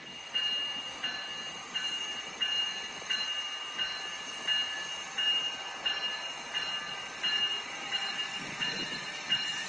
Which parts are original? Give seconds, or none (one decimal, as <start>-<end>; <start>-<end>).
0.0-1.6; 2.3-6.9